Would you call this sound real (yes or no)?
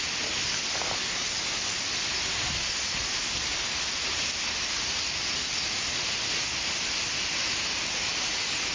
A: yes